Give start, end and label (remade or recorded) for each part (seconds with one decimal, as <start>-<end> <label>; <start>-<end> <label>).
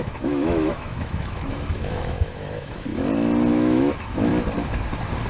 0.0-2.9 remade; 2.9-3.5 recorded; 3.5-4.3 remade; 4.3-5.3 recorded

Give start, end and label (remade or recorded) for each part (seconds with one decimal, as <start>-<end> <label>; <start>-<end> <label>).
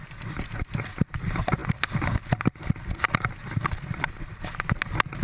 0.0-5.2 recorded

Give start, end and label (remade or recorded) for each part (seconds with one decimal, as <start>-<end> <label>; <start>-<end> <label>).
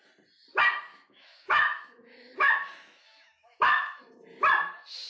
0.0-0.9 recorded; 0.9-4.0 remade; 4.0-5.1 recorded